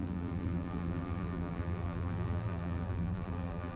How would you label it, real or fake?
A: fake